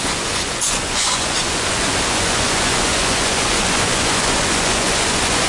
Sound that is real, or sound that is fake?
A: fake